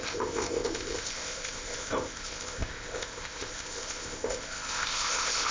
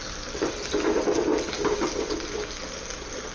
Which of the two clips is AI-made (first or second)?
first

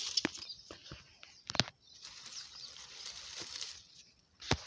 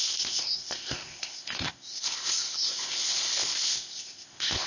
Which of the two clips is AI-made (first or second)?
second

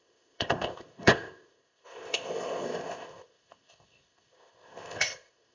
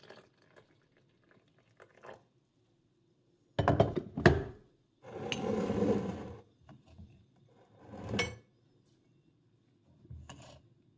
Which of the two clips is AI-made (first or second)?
first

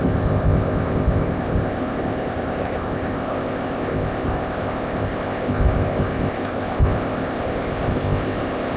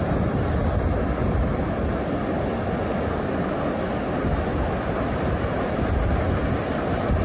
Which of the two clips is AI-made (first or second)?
first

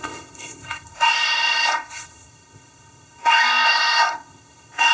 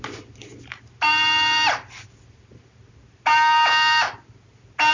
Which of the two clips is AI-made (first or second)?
first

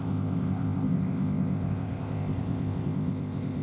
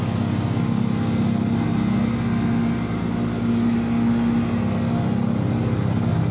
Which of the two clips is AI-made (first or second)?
first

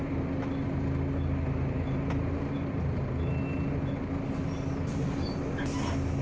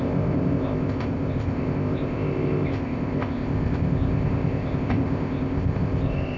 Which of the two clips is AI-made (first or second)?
second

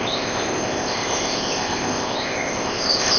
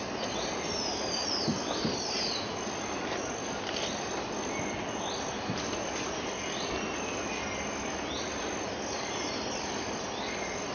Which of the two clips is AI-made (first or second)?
first